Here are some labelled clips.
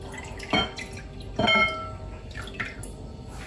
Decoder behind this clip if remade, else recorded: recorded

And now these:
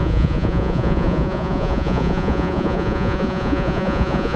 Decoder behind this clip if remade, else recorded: remade, vocoder, Vocos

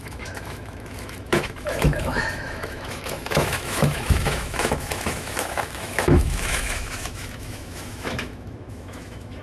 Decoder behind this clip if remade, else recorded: remade, autoencoder, DAC-VAE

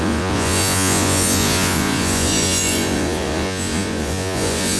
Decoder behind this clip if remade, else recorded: remade, vocoder, Vocos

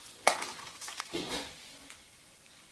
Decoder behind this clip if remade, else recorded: remade, vocoder, Vocos